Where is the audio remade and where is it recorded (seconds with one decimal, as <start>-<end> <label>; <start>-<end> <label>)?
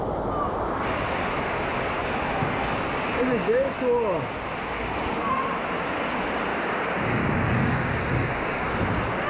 0.0-2.0 recorded; 2.0-3.7 remade; 3.7-4.6 recorded; 4.6-5.3 remade; 5.3-6.5 recorded; 6.5-8.6 remade; 8.6-9.3 recorded